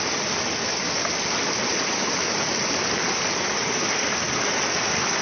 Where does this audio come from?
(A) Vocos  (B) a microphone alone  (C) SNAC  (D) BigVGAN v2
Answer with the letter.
B